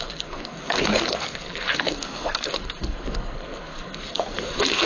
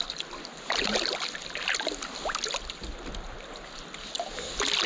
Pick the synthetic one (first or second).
first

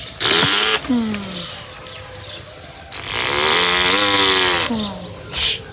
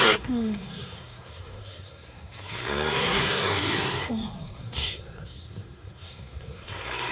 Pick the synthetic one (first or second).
second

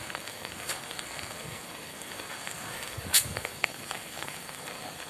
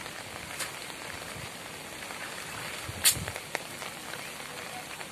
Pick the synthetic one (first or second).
first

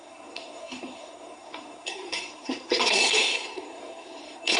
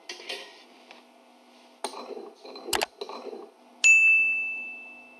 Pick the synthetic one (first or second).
first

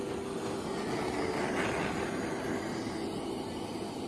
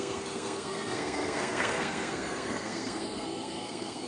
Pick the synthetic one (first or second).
second